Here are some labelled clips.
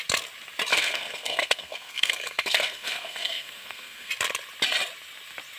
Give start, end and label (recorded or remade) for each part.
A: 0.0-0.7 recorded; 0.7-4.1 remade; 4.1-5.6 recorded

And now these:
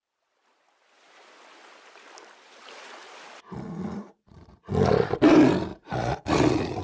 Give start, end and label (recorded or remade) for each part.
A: 0.0-3.9 recorded; 3.9-4.7 remade; 4.7-5.7 recorded; 5.7-6.8 remade